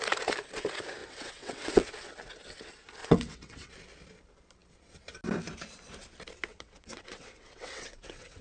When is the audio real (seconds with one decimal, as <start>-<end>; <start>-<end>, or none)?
0.0-1.0; 1.9-3.0; 3.7-6.5